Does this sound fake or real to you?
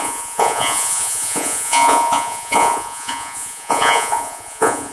fake